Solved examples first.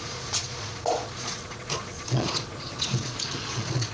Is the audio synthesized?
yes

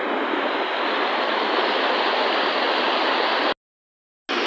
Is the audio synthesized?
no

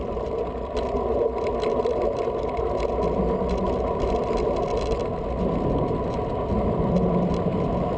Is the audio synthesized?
no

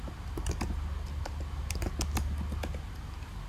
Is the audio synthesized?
no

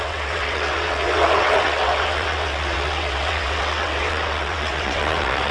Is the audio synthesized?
yes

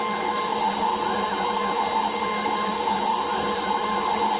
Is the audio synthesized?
no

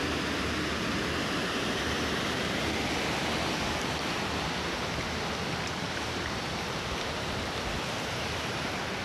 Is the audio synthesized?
no